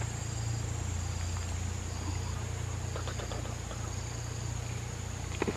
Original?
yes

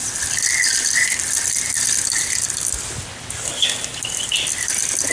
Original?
yes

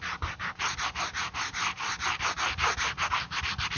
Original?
yes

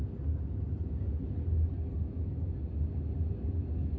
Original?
yes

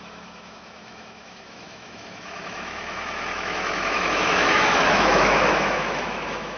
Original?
no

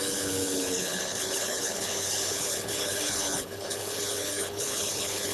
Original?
no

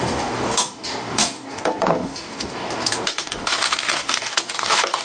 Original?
no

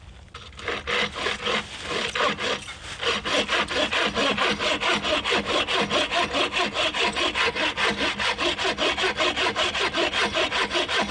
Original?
yes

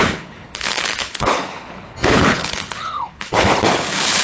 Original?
no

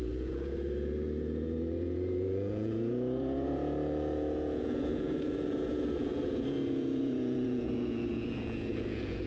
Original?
no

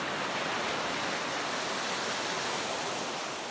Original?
yes